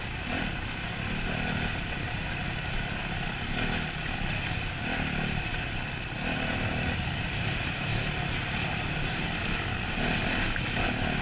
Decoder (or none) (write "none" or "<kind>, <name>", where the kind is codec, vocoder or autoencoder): none